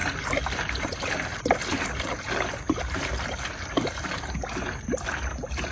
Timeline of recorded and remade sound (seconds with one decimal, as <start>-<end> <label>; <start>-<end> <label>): 0.0-5.7 recorded